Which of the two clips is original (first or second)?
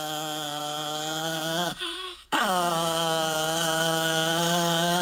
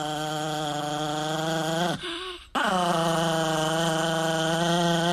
second